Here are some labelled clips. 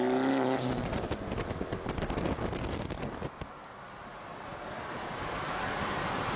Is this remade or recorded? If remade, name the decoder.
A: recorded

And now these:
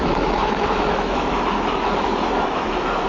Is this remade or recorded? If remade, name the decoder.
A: remade, autoencoder, DAC-VAE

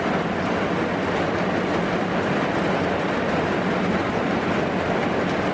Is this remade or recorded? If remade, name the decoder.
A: recorded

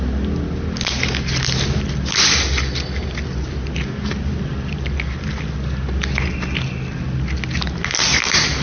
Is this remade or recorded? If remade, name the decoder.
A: recorded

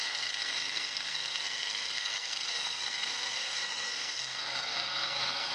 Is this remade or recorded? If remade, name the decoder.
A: remade, codec, SNAC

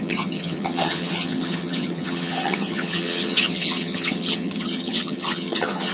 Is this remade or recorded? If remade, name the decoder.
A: remade, vocoder, HiFi-GAN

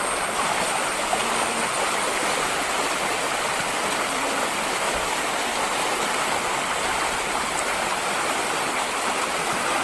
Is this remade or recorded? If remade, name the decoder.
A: recorded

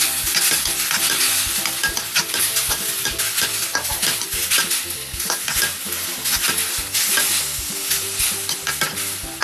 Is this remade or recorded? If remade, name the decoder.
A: recorded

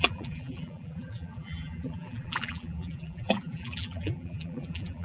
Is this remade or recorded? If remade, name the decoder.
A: remade, vocoder, BigVGAN v2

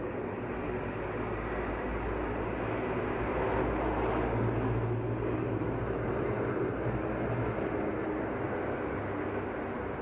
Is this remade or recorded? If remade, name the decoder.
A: recorded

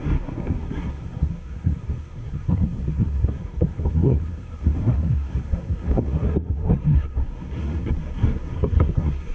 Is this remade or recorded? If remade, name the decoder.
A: remade, codec, SNAC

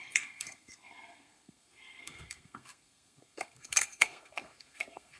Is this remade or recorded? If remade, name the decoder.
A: remade, codec, SNAC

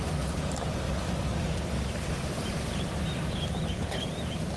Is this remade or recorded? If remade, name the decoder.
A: recorded